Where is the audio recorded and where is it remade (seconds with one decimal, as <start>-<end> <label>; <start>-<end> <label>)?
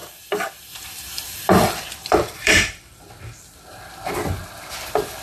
0.0-3.1 remade; 3.1-5.2 recorded